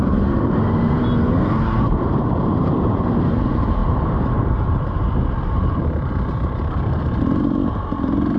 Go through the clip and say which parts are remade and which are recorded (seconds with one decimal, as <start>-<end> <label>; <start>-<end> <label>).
0.0-8.4 remade